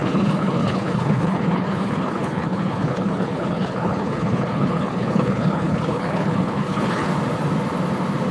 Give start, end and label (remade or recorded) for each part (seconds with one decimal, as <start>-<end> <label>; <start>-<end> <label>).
0.0-7.1 remade; 7.1-8.3 recorded